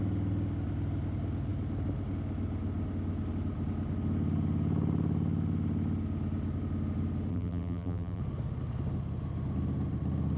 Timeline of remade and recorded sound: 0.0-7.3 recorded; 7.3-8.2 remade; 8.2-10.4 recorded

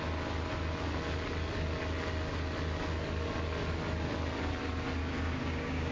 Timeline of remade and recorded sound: 0.0-5.0 recorded; 5.0-5.9 remade

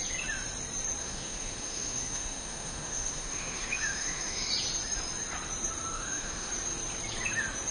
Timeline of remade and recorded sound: 0.0-1.0 recorded; 1.0-4.5 remade; 4.5-5.9 recorded; 5.9-6.5 remade; 6.5-7.7 recorded